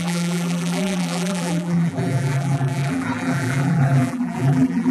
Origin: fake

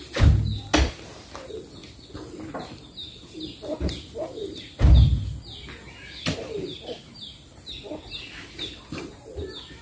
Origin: real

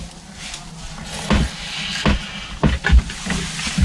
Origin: real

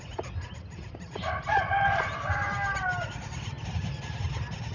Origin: real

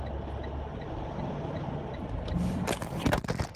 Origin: real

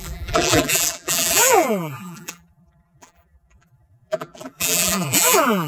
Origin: fake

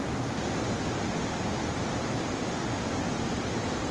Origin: real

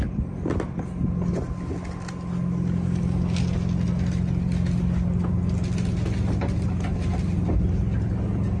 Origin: real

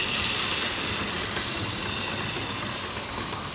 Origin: fake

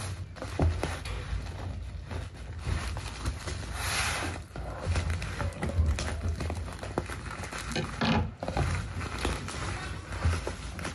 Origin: real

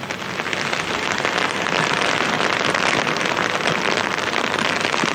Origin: fake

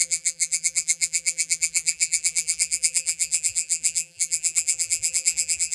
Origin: fake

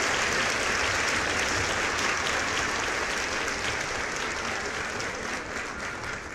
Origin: real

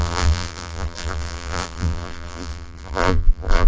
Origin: fake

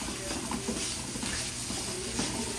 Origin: real